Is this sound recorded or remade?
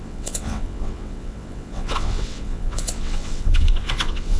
remade